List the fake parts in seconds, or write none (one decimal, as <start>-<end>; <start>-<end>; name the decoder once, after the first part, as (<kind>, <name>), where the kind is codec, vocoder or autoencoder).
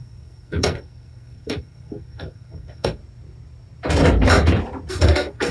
0.0-3.0 (codec, SNAC); 4.9-5.5